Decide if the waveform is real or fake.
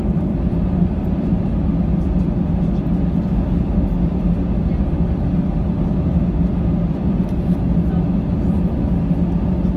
real